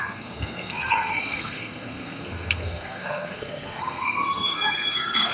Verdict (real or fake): fake